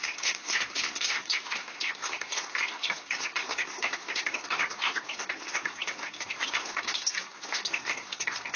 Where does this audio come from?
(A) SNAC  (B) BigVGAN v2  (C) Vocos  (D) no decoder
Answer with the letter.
A